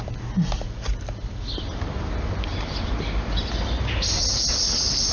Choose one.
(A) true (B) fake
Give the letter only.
A